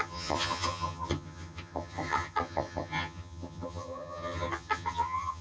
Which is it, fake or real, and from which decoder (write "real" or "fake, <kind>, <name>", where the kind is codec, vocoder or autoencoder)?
fake, vocoder, HiFi-GAN